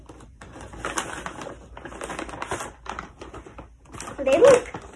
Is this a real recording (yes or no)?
yes